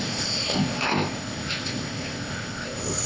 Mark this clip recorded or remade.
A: remade